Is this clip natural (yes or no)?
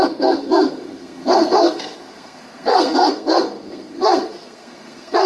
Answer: no